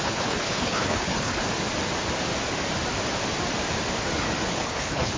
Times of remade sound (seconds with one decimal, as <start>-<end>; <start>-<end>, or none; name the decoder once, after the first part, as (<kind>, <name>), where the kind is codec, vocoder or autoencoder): 0.0-1.4 (codec, HILCodec); 4.5-5.2